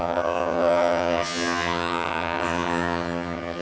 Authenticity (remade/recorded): remade